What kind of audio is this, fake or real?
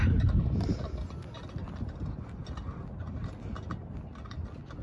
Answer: real